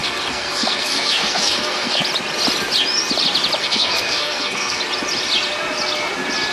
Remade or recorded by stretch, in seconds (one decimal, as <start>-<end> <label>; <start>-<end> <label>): 0.0-2.0 remade; 2.0-3.6 recorded; 3.6-4.8 remade; 4.8-6.5 recorded